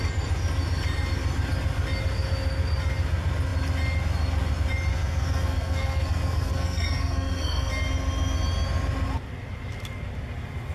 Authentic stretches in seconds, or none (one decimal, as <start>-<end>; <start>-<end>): 0.0-4.9; 7.7-10.7